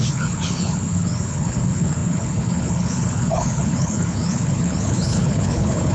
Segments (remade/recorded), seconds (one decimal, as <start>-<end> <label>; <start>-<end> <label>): 0.0-5.9 remade